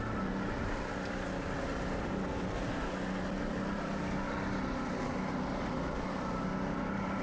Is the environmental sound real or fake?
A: real